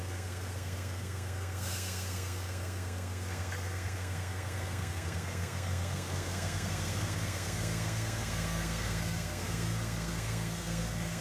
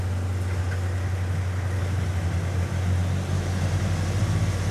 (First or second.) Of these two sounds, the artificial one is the first